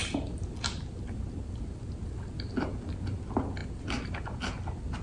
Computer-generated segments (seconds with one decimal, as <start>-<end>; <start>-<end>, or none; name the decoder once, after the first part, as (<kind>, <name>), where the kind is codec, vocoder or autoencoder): none